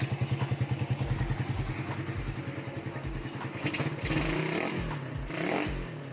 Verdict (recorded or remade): recorded